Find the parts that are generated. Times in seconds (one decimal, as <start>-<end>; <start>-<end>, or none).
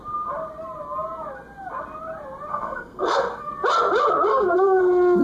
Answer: 2.5-3.5; 4.3-4.8